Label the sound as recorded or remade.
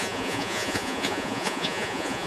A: remade